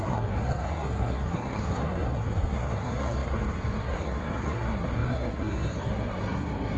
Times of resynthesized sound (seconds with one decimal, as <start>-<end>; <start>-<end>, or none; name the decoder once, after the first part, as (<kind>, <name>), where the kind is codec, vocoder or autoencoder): 0.0-6.8 (codec, SNAC)

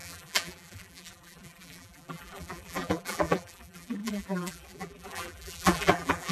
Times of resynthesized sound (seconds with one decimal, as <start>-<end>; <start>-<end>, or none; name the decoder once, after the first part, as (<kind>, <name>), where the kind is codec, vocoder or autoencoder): 0.0-6.3 (vocoder, BigVGAN v2)

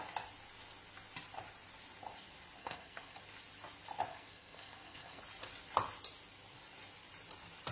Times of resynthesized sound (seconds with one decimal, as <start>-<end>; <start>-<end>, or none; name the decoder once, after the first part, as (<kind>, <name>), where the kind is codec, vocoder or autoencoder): 2.6-3.2 (codec, SNAC); 4.1-5.2

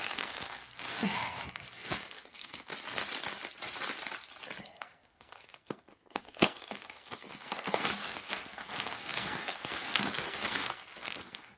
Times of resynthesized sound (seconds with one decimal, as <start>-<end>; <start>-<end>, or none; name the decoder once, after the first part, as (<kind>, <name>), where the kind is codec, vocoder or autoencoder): 0.0-2.7 (codec, SNAC); 4.6-11.6

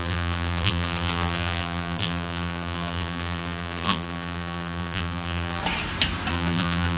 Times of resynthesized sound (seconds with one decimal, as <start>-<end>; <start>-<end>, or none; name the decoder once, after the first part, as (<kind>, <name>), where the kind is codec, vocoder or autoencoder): 0.0-5.6 (vocoder, BigVGAN v2); 6.3-7.0

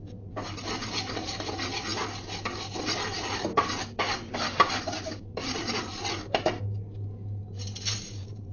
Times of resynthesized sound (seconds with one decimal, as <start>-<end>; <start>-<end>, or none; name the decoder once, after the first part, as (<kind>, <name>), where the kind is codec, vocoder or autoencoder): 0.0-1.9 (vocoder, BigVGAN v2); 2.8-5.9; 7.4-8.5

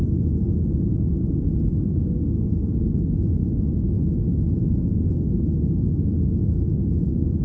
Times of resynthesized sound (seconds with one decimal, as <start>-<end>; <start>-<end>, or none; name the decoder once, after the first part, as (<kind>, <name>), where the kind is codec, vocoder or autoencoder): 1.8-2.7 (codec, SNAC); 4.6-5.3